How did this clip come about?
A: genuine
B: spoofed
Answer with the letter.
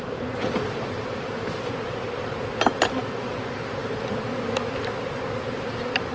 B